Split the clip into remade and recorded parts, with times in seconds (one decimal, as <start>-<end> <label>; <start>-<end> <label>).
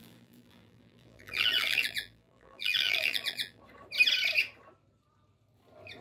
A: 0.0-3.6 remade; 3.6-6.0 recorded